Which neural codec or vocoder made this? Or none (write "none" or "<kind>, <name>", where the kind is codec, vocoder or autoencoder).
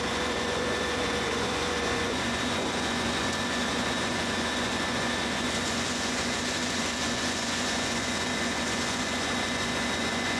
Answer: vocoder, Vocos